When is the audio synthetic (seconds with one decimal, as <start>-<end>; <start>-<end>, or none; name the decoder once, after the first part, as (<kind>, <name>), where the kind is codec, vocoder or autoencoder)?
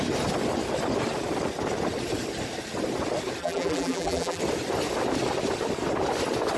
3.4-4.4 (vocoder, BigVGAN v2)